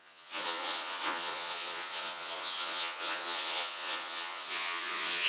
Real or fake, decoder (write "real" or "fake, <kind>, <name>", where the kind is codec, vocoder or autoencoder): fake, vocoder, Vocos